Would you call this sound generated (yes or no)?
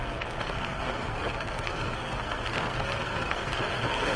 yes